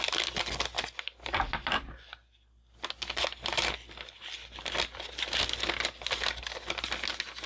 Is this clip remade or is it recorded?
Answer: recorded